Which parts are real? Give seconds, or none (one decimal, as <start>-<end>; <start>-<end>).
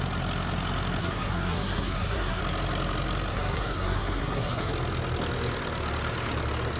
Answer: 0.0-1.0; 2.4-3.3; 4.7-6.8